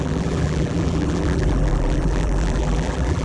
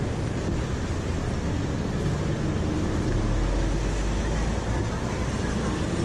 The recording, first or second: second